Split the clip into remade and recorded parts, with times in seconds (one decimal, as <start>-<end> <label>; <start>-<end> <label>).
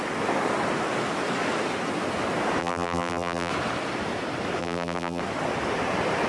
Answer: 0.0-2.6 recorded; 2.6-3.5 remade; 3.5-4.6 recorded; 4.6-5.2 remade; 5.2-6.3 recorded